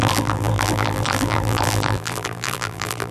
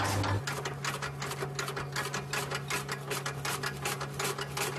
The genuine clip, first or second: second